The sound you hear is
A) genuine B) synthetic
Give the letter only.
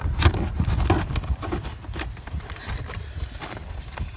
B